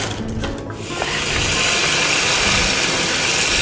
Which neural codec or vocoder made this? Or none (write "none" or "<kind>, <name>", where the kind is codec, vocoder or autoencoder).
none